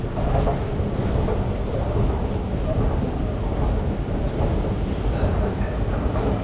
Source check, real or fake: real